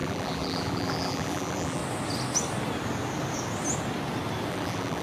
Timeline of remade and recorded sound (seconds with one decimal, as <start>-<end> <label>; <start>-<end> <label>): 0.0-1.8 remade; 1.8-4.5 recorded; 4.5-5.0 remade